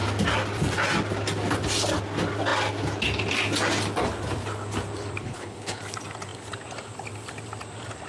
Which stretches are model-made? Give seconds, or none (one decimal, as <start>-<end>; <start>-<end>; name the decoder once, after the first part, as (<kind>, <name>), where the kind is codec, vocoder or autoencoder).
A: 5.2-5.8 (codec, HILCodec)